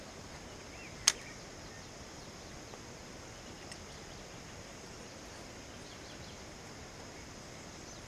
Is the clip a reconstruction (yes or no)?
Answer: no